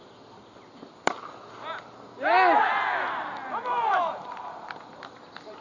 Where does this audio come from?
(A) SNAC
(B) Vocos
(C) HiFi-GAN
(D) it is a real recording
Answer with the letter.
D